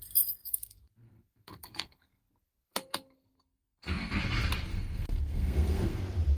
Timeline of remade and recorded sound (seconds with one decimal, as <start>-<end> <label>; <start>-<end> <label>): 0.0-0.4 recorded; 0.4-4.2 remade; 4.2-4.7 recorded; 4.7-6.0 remade; 6.0-6.4 recorded

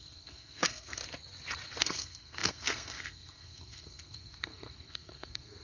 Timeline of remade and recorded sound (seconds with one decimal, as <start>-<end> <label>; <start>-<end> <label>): 0.0-1.0 remade; 1.0-1.8 recorded; 1.8-5.6 remade

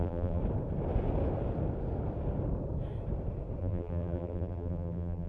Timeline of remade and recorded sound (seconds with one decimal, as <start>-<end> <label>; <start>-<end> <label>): 0.0-0.4 remade; 0.4-3.6 recorded; 3.6-5.3 remade

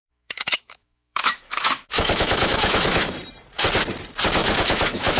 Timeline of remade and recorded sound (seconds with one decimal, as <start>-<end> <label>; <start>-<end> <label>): 0.0-3.1 remade; 3.1-4.4 recorded; 4.4-5.2 remade

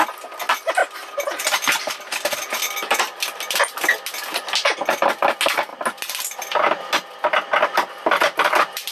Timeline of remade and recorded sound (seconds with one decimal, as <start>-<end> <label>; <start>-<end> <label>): 0.0-8.9 recorded